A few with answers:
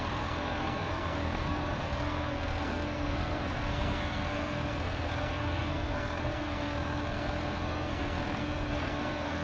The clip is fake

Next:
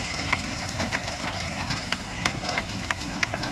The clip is fake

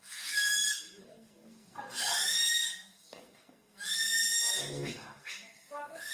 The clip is fake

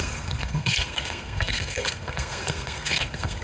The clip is fake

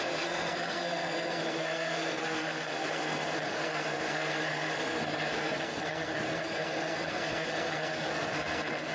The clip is fake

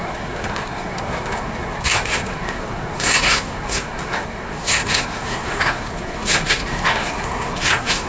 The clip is fake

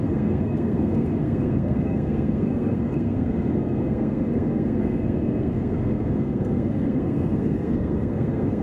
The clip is fake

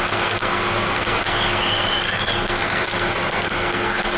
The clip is fake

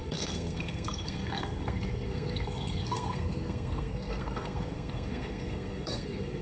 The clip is fake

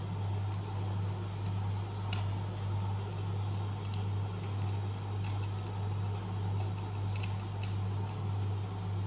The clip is real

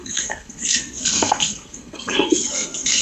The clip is fake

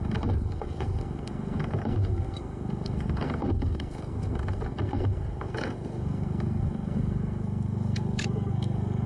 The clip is fake